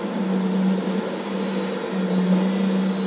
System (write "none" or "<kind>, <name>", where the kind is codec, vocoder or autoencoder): none